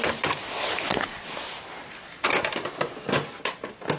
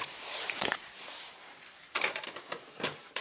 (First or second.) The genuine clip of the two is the first